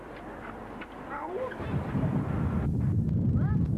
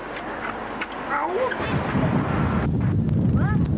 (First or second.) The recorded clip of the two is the second